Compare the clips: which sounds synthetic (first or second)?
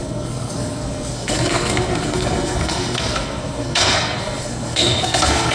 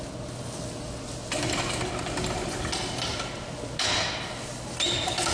first